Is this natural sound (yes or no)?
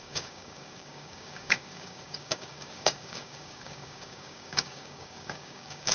no